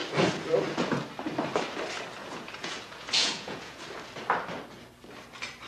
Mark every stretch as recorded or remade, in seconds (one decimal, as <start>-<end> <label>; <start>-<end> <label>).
0.0-2.2 recorded; 2.2-3.8 remade; 3.8-5.7 recorded